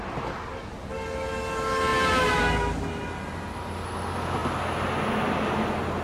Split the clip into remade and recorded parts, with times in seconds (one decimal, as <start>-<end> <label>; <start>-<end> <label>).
0.0-6.0 recorded